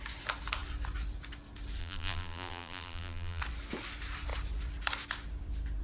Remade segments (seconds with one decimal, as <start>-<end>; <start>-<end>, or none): 1.8-3.4